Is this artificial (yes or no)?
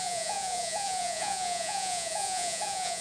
yes